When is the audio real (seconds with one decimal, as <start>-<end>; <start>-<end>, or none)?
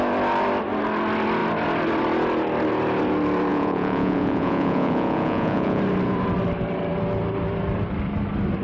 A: 0.0-3.5; 5.8-8.6